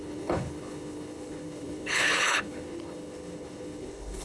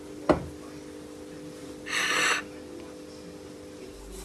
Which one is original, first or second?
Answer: second